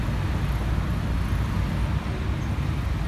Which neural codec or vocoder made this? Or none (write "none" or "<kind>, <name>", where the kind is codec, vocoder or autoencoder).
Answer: none